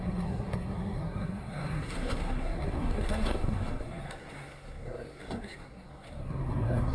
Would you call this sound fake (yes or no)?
yes